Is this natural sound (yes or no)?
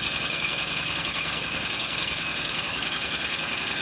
no